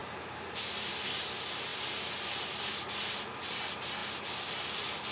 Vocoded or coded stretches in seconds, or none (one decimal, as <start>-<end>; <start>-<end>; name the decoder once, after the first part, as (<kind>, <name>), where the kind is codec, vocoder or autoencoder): 0.0-0.6 (vocoder, BigVGAN v2)